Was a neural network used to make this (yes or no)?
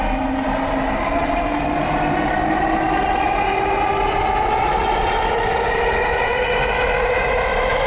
no